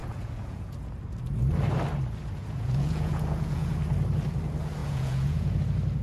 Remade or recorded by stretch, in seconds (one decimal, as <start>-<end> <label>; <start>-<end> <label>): 0.0-0.9 remade; 0.9-2.4 recorded; 2.4-3.7 remade; 3.7-4.8 recorded; 4.8-5.6 remade; 5.6-6.0 recorded